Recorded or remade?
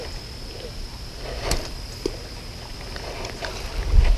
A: recorded